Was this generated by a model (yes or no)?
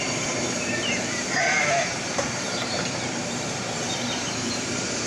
yes